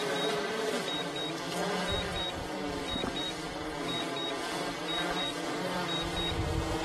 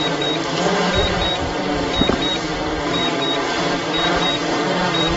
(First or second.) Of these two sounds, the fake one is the second